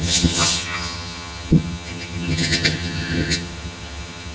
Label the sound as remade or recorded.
remade